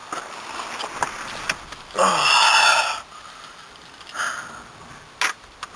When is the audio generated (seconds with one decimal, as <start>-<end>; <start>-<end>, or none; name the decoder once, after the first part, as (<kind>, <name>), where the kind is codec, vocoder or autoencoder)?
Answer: none